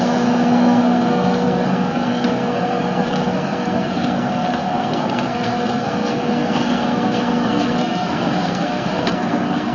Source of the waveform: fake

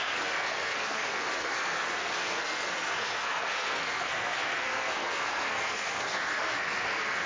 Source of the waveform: fake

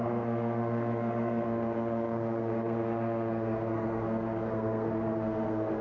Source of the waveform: fake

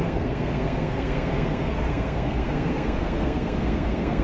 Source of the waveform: fake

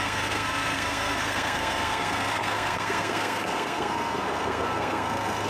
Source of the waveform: fake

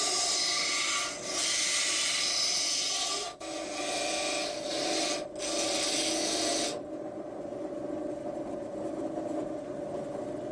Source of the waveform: real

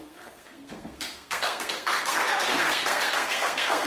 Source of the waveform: fake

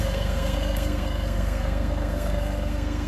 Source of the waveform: fake